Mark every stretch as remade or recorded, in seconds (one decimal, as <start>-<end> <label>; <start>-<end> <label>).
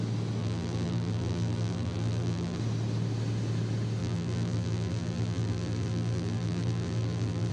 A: 0.0-0.4 recorded; 0.4-2.6 remade; 2.6-4.0 recorded; 4.0-7.5 remade